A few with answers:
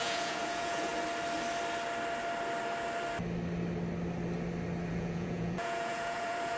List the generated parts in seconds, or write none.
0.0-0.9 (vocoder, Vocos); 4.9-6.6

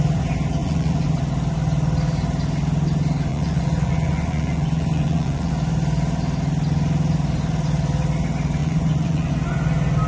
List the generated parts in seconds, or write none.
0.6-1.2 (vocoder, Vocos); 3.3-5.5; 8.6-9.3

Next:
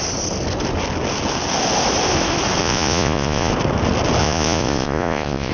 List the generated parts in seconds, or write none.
2.6-3.5 (vocoder, Vocos); 4.2-5.5